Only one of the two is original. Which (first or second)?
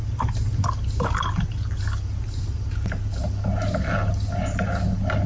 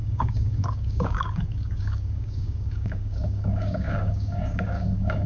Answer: first